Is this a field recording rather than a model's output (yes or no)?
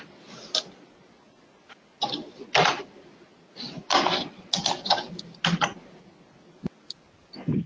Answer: yes